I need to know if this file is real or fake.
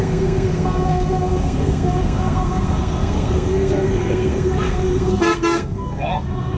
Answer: fake